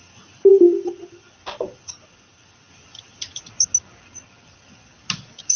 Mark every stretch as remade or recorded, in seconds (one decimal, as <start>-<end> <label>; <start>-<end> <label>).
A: 0.0-5.6 recorded